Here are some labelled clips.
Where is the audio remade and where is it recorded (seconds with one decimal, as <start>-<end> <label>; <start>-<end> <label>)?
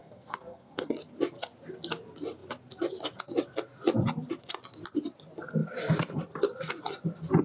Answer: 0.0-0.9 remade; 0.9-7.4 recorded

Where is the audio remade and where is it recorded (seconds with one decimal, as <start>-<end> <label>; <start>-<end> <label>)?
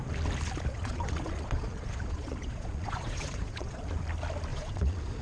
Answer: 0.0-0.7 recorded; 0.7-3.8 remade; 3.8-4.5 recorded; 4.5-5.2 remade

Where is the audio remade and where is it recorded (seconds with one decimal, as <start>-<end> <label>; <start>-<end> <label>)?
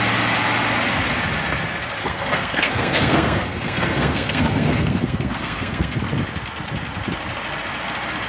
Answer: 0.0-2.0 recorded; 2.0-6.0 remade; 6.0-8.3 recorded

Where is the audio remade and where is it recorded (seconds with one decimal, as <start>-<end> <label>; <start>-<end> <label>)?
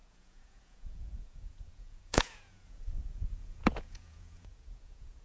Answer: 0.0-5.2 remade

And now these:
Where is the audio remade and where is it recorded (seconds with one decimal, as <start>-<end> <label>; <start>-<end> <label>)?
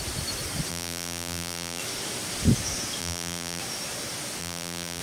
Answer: 0.0-0.7 recorded; 0.7-1.8 remade; 1.8-3.0 recorded; 3.0-3.6 remade; 3.6-4.4 recorded; 4.4-5.0 remade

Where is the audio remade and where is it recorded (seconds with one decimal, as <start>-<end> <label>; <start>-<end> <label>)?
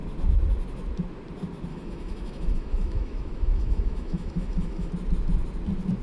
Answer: 0.0-1.7 recorded; 1.7-4.9 remade; 4.9-6.0 recorded